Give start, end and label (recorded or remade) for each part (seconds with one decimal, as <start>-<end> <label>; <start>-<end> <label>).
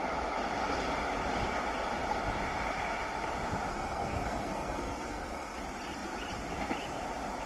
0.0-3.7 recorded; 3.7-5.6 remade; 5.6-7.5 recorded